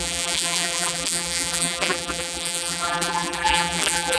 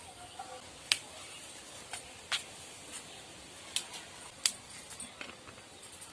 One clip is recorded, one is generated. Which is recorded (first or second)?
second